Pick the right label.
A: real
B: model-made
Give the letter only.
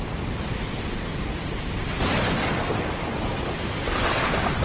B